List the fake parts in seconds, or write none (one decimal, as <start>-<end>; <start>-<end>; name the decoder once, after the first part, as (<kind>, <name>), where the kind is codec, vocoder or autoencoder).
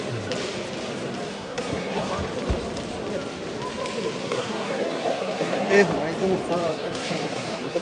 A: 1.3-2.1 (codec, SNAC); 4.2-5.7; 6.7-7.8